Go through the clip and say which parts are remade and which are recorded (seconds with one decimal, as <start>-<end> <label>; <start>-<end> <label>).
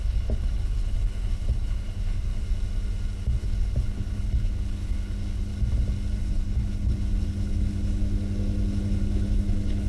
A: 0.0-2.3 remade; 2.3-3.4 recorded; 3.4-5.5 remade; 5.5-6.2 recorded; 6.2-8.0 remade; 8.0-8.7 recorded; 8.7-9.9 remade